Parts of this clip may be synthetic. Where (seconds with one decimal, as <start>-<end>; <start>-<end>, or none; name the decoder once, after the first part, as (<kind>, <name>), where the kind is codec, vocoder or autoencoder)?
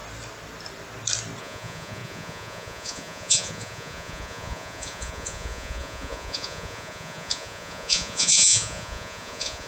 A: 1.4-9.7 (vocoder, Vocos)